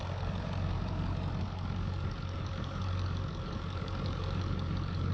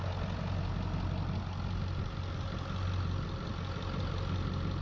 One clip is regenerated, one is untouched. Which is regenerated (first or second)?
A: first